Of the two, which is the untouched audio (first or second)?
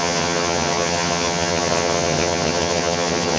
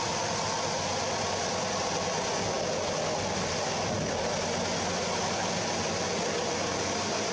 second